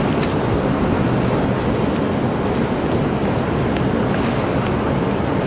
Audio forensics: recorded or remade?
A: recorded